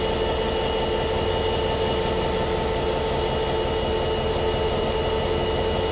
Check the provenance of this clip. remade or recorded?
recorded